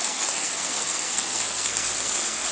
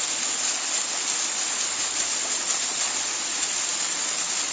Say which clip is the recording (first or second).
second